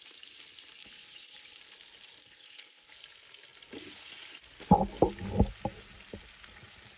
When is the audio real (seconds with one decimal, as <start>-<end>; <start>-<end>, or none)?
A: 0.0-0.8; 1.6-2.2; 2.9-7.0